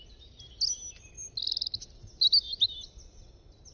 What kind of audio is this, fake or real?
real